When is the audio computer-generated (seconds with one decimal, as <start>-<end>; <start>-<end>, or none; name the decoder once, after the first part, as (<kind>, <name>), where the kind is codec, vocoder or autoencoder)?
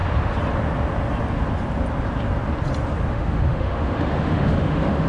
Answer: 3.1-5.1 (autoencoder, DAC-VAE)